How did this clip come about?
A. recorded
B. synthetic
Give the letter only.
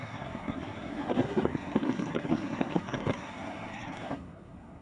B